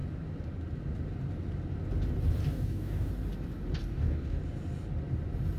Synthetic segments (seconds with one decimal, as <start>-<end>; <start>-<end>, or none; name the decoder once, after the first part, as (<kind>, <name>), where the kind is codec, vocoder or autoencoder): 2.4-3.1 (codec, DAC); 3.8-4.4

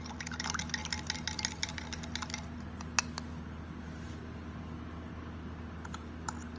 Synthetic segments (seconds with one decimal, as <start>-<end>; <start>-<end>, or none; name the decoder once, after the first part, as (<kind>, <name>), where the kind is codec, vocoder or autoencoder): none

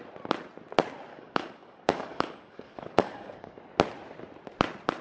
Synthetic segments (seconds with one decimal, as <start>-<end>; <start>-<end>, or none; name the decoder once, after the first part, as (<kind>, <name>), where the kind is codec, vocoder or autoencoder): 1.1-3.6 (codec, DAC)

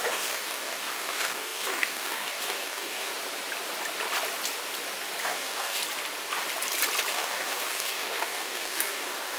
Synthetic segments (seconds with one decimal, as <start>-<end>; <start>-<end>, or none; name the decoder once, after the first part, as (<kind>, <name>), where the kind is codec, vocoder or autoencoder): 0.0-3.1 (codec, DAC); 5.2-5.8; 7.1-9.4

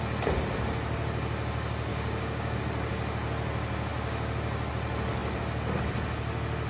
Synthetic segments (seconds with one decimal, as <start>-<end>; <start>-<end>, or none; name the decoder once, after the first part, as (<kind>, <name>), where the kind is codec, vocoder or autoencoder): 1.9-2.6 (codec, DAC)